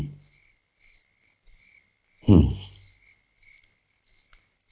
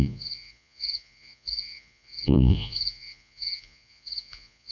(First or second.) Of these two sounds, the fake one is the second